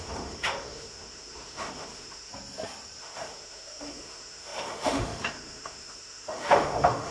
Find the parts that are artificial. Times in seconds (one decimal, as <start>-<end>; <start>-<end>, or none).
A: 0.0-2.3; 3.0-7.1